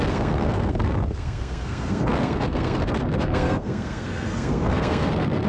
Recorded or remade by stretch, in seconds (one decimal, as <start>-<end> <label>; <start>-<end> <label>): 0.0-5.5 remade